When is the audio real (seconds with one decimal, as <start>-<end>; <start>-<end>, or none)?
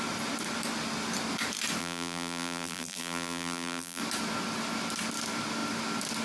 0.0-1.8; 4.0-6.2